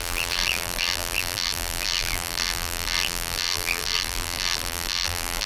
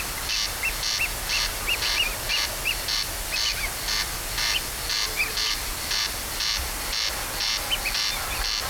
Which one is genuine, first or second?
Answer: second